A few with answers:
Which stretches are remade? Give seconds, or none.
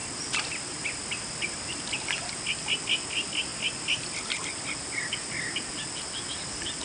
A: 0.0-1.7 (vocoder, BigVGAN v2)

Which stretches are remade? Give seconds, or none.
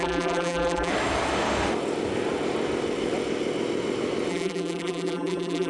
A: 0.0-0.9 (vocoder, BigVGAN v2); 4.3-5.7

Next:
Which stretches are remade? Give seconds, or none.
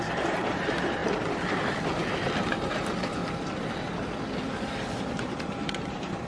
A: 0.0-1.0 (vocoder, BigVGAN v2); 2.4-3.2; 5.1-6.3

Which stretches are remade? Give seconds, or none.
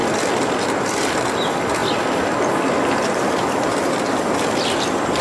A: none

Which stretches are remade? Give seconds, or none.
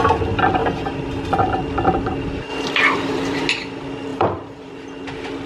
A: 2.5-3.5 (vocoder, BigVGAN v2); 4.1-4.7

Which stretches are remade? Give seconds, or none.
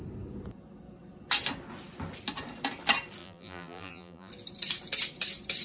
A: 3.2-4.3 (vocoder, BigVGAN v2)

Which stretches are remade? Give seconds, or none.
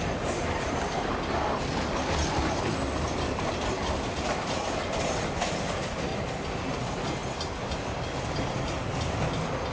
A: 0.0-6.1 (vocoder, BigVGAN v2); 6.7-9.7